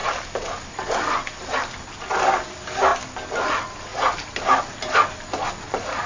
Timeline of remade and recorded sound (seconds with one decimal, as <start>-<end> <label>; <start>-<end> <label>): 0.0-6.1 recorded